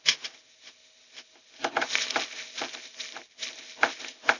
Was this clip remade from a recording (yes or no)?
no